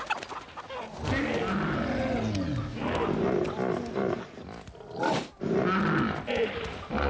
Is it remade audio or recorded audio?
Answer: recorded